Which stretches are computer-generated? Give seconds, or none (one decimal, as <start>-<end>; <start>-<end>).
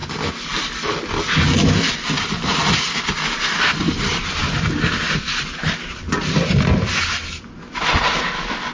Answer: none